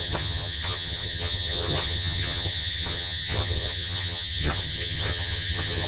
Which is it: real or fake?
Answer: fake